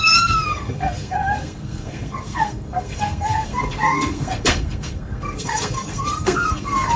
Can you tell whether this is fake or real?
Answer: fake